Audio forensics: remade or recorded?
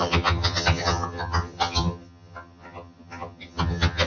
remade